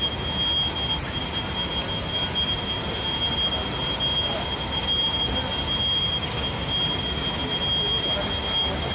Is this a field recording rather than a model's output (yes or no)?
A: yes